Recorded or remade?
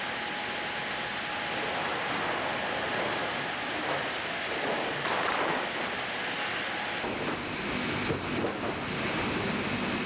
recorded